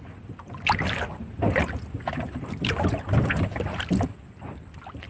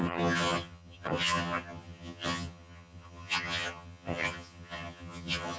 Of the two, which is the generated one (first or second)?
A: second